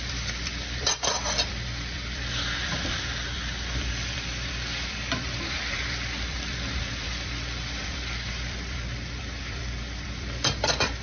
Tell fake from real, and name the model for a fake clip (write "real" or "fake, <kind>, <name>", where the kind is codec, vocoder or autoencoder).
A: fake, vocoder, BigVGAN v2